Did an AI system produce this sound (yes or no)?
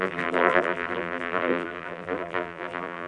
yes